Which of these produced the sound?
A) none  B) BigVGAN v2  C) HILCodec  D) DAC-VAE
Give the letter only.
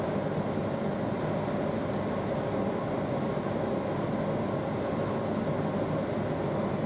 A